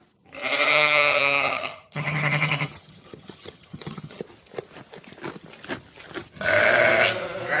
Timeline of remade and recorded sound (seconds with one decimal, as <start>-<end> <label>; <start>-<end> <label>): 0.0-0.7 recorded; 0.7-4.2 remade; 4.2-7.6 recorded